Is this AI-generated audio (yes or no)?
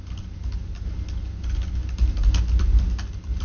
no